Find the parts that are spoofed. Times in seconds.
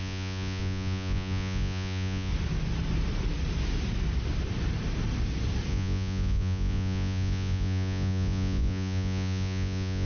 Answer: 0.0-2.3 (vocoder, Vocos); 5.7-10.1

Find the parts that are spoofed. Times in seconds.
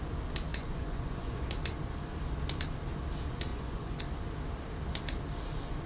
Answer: 0.5-1.5 (vocoder, Vocos); 3.5-4.0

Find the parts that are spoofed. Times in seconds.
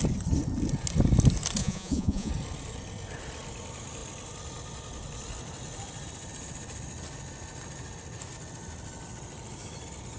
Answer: 1.6-2.3 (vocoder, Vocos)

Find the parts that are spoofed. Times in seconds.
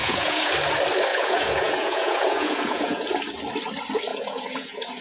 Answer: 0.0-0.5 (vocoder, Vocos); 1.1-3.1; 4.1-5.0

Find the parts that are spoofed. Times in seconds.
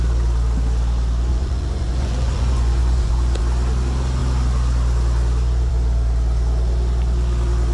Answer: 1.3-3.4 (vocoder, Vocos)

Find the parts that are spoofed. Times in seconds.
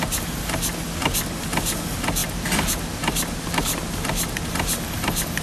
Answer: none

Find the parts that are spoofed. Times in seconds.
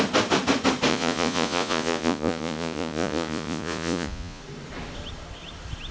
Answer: 0.9-4.4 (vocoder, Vocos)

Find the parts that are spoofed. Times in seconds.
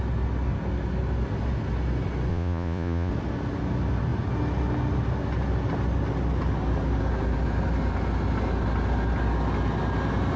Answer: 2.3-3.1 (vocoder, Vocos)